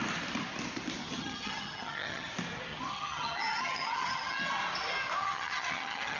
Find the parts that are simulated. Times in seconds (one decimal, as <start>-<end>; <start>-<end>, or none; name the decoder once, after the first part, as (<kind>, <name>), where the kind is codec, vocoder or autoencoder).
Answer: 1.0-2.3 (vocoder, HiFi-GAN); 2.7-4.5; 5.2-6.2